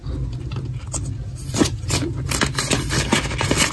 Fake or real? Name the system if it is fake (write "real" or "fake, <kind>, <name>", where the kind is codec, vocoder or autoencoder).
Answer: real